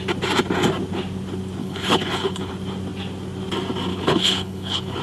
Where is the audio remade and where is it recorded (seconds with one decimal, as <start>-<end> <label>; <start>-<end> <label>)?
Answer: 0.0-1.6 recorded; 1.6-2.5 remade; 2.5-3.9 recorded; 3.9-5.0 remade